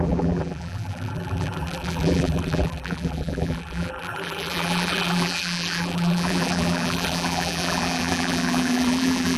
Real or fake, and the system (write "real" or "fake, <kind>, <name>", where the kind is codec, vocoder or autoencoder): fake, vocoder, BigVGAN v2